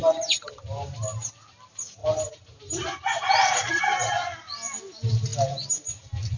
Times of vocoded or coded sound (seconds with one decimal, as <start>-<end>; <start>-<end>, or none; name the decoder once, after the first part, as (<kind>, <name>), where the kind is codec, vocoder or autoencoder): 2.0-3.7 (vocoder, BigVGAN v2)